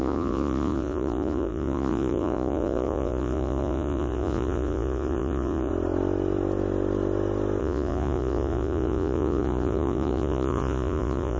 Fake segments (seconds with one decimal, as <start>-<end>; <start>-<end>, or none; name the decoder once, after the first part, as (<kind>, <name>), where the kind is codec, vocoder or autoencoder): 0.0-5.7 (vocoder, Vocos); 7.6-11.4